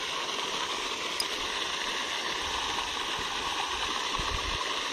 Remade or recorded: recorded